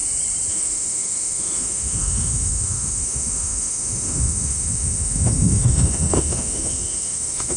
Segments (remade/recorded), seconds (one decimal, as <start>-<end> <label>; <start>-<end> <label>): 0.0-0.5 recorded; 0.5-7.6 remade